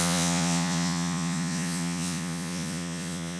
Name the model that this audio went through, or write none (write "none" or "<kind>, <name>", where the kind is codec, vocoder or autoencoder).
vocoder, Vocos